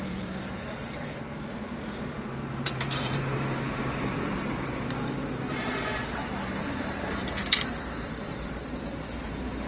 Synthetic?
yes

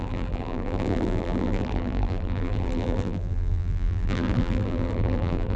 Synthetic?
yes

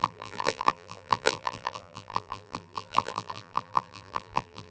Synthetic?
yes